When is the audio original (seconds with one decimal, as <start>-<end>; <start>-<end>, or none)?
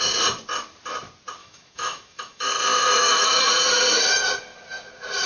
0.0-1.4; 3.4-5.3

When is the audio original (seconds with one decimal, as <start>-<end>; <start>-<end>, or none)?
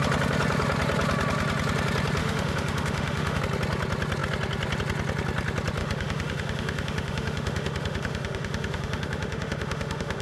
0.0-2.2; 3.4-5.8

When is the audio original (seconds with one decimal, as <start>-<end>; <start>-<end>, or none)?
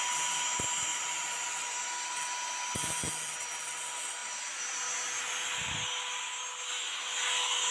0.0-7.7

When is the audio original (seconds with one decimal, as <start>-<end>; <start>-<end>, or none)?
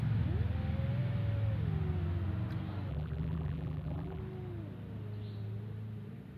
0.0-2.9; 4.2-6.4